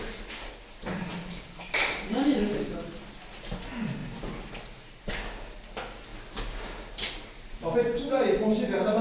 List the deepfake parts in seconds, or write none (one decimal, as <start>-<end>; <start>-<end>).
1.1-3.0